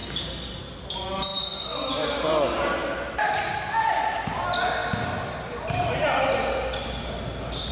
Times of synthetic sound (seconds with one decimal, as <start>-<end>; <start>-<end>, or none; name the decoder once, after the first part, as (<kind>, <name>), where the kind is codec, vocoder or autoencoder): 0.0-0.6 (codec, DAC)